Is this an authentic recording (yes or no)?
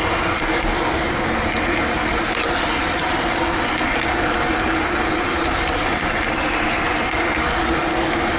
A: yes